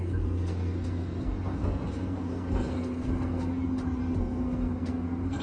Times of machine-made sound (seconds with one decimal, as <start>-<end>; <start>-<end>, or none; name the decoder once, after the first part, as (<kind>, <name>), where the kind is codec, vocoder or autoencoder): 0.0-3.5 (codec, SNAC); 4.2-5.4